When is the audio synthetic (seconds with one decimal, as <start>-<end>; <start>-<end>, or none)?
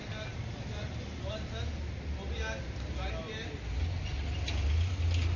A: none